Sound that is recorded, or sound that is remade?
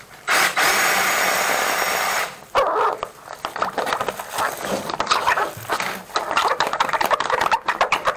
remade